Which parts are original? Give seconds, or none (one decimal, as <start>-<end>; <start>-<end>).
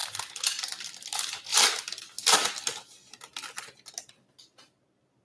0.0-5.2